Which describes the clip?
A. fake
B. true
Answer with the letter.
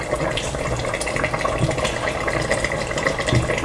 B